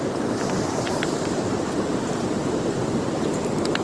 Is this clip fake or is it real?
fake